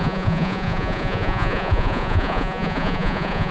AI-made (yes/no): yes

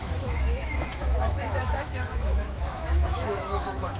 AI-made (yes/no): yes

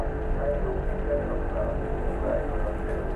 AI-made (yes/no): no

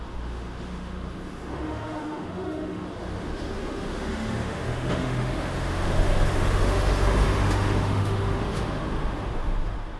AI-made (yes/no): yes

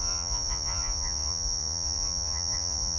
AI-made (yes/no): yes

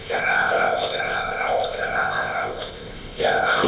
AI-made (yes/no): yes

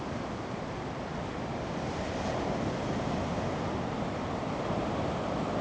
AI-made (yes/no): no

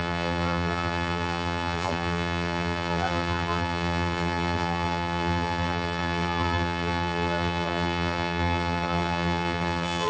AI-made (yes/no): yes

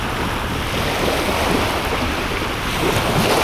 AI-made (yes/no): no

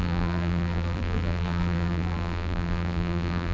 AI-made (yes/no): yes